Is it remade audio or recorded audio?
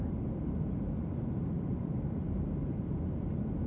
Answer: remade